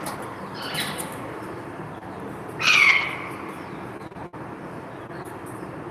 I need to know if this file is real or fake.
real